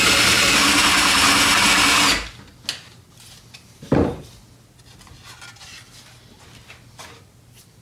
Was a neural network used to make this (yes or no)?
no